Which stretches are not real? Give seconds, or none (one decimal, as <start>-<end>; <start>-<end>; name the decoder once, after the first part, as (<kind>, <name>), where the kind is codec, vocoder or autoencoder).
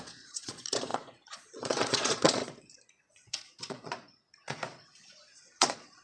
0.0-6.0 (vocoder, Vocos)